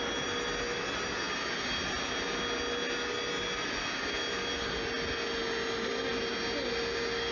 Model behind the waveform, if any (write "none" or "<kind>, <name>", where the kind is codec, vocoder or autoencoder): none